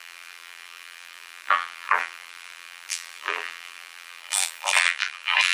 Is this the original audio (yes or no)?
no